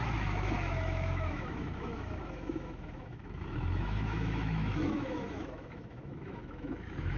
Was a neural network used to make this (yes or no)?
yes